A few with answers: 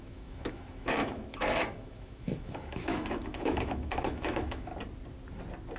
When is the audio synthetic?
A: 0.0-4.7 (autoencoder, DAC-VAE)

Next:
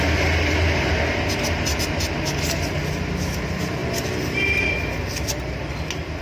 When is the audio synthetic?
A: none